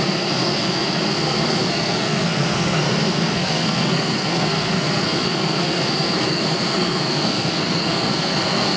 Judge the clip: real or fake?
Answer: fake